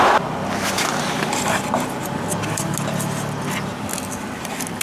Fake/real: real